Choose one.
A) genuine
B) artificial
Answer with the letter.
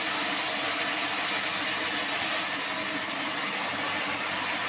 A